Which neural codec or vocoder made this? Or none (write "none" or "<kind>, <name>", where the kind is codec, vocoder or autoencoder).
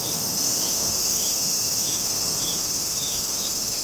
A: autoencoder, DAC-VAE